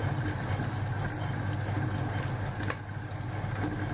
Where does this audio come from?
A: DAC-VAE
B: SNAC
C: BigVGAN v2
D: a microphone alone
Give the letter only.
D